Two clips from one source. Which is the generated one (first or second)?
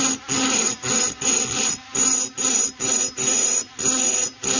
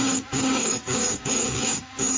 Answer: second